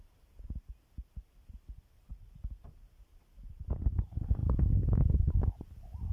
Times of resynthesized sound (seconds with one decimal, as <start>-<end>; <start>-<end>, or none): 4.4-5.3